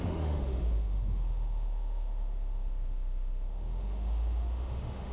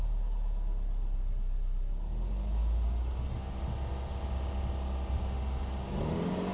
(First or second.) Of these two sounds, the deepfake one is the first